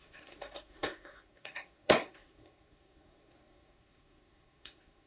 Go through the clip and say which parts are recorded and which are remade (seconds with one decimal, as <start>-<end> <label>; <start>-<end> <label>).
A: 0.0-5.1 remade